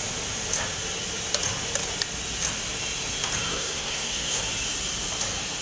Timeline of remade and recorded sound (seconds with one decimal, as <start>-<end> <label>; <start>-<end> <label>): 0.0-3.5 recorded; 3.5-4.4 remade; 4.4-5.6 recorded